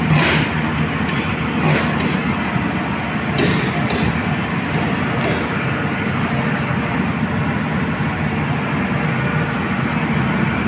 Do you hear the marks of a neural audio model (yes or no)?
no